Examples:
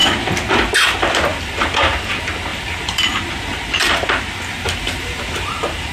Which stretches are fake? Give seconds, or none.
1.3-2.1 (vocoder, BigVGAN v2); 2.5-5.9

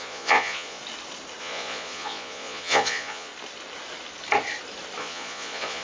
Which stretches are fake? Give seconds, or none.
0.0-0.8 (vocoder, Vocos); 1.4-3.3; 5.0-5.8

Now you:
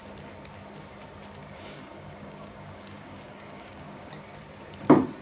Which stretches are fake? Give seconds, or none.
1.4-4.1 (codec, DAC)

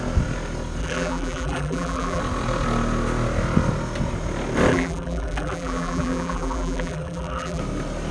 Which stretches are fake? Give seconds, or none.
0.8-2.2 (vocoder, BigVGAN v2); 4.7-7.6

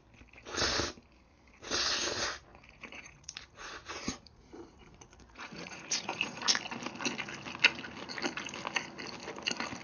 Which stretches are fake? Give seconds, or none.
2.5-6.5 (vocoder, Vocos)

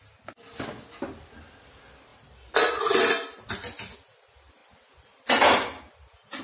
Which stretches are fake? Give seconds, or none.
none